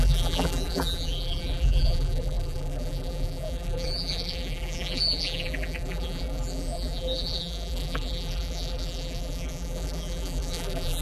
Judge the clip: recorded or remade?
remade